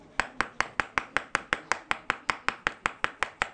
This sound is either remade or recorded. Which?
recorded